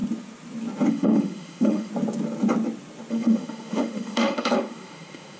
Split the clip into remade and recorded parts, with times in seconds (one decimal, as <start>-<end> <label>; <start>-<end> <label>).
0.0-0.9 recorded; 0.9-1.9 remade; 1.9-3.1 recorded; 3.1-5.4 remade